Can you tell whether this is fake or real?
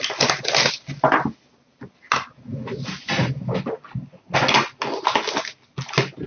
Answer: real